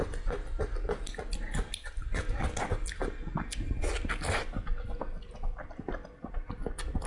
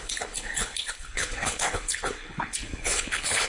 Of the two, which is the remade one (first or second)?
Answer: second